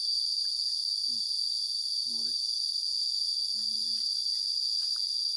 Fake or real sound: real